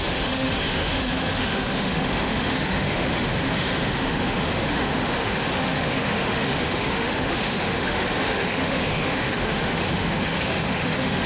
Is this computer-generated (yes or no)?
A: yes